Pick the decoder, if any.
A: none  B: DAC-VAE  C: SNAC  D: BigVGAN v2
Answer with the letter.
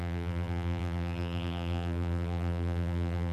D